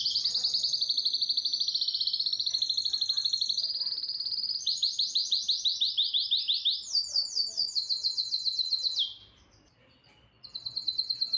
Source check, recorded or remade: remade